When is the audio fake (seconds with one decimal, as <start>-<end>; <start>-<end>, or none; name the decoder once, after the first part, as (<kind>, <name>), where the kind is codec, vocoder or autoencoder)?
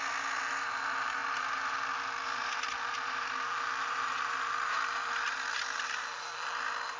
none